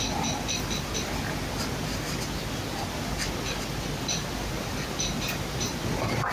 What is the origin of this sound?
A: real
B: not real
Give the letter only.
A